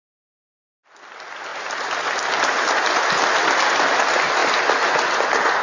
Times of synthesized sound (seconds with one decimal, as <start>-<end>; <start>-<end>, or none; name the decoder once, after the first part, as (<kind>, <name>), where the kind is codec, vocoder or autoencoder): none